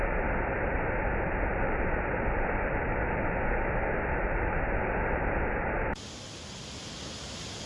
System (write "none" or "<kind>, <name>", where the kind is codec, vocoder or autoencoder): none